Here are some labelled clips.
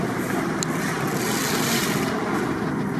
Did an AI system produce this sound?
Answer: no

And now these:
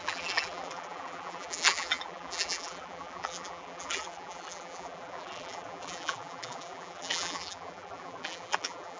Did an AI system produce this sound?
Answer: yes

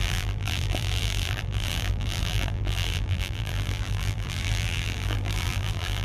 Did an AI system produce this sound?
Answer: yes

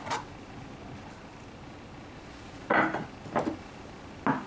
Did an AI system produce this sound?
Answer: no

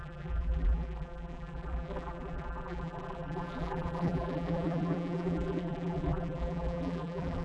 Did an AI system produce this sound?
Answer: yes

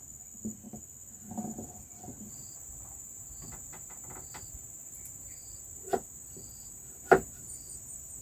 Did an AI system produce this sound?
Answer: no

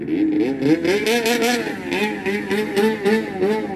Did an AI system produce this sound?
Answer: no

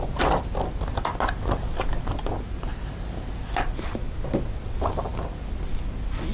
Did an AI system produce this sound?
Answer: no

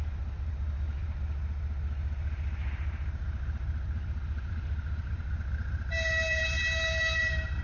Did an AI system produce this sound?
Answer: yes